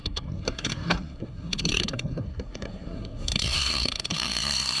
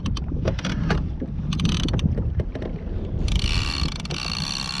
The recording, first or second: second